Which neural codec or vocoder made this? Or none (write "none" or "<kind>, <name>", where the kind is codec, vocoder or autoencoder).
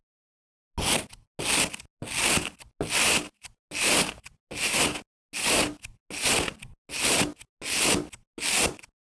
none